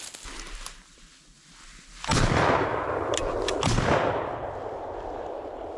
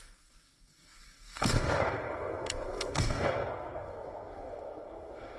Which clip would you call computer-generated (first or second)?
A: second